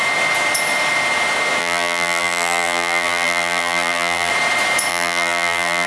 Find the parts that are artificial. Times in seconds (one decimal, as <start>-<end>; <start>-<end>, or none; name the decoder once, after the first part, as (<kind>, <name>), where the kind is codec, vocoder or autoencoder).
1.6-4.3 (vocoder, BigVGAN v2); 4.9-5.9